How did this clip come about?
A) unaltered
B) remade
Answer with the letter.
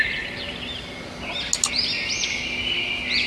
A